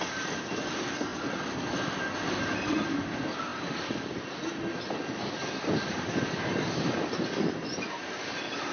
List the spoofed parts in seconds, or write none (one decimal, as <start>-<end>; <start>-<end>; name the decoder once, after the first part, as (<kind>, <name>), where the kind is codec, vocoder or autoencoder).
0.0-1.1 (vocoder, BigVGAN v2); 2.9-3.5; 8.0-8.7